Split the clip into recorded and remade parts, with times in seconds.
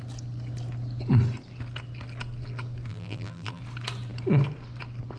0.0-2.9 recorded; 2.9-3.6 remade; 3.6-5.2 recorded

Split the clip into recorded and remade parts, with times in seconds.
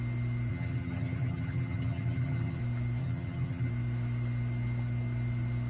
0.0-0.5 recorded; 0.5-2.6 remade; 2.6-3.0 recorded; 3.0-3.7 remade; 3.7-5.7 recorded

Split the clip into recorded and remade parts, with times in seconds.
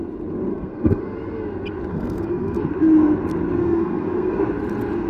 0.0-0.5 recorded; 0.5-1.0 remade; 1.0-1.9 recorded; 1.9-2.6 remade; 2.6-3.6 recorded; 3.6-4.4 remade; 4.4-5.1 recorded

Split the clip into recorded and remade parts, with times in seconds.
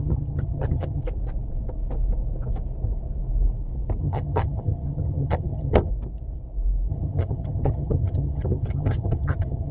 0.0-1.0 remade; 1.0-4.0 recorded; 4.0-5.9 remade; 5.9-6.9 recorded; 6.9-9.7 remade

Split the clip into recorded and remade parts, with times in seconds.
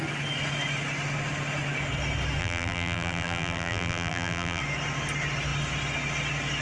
0.0-2.4 recorded; 2.4-4.6 remade; 4.6-6.6 recorded